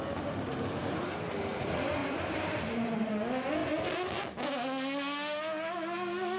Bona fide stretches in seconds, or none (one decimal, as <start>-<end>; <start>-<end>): 0.0-0.8; 1.4-2.0; 3.1-6.4